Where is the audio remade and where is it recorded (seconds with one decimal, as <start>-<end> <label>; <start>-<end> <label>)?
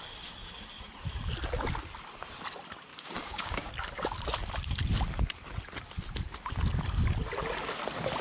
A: 0.0-2.9 recorded; 2.9-3.7 remade; 3.7-8.2 recorded